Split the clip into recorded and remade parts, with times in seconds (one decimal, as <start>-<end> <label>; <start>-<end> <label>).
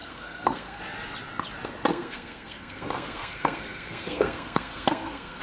0.0-0.8 remade; 0.8-1.9 recorded; 1.9-5.4 remade